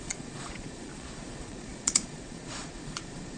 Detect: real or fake fake